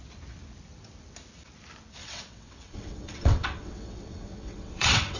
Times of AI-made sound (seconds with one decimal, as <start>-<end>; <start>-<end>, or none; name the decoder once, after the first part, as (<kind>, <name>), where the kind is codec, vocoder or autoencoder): 2.0-5.2 (vocoder, WaveNeXt)